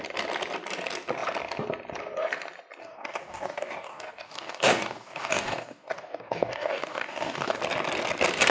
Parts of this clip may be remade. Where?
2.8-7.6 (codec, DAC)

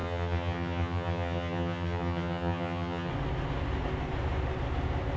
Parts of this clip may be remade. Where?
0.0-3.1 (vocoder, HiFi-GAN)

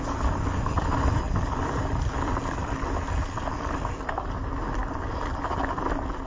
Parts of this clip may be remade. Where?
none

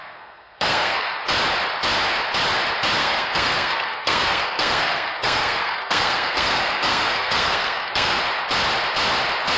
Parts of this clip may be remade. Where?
0.0-1.2 (codec, SNAC); 3.0-8.2

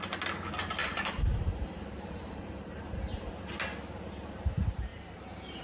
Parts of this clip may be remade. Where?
0.8-3.3 (vocoder, BigVGAN v2); 4.9-5.6

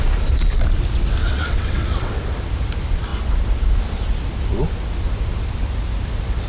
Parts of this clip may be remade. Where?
1.2-2.1 (vocoder, WaveNeXt)